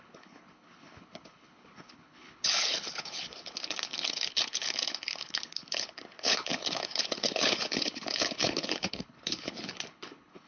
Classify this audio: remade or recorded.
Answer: remade